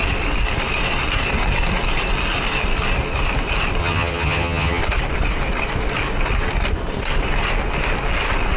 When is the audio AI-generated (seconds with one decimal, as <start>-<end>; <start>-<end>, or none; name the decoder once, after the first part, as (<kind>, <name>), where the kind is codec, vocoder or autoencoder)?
3.8-4.8 (vocoder, HiFi-GAN)